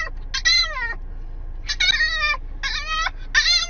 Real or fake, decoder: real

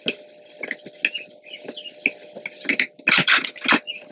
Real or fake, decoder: real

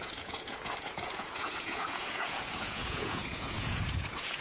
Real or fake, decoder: fake, vocoder, Vocos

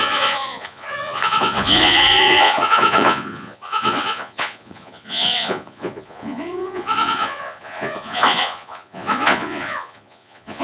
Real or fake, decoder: fake, vocoder, Vocos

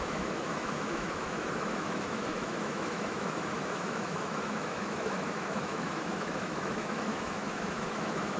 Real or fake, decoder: fake, autoencoder, DAC-VAE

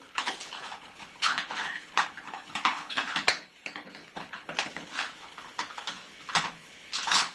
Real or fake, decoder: fake, codec, HILCodec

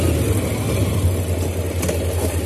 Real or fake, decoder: real